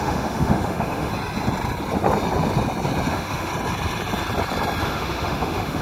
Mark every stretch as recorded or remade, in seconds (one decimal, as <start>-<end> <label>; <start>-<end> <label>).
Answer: 0.0-1.1 remade; 1.1-3.1 recorded; 3.1-3.5 remade; 3.5-4.8 recorded; 4.8-5.8 remade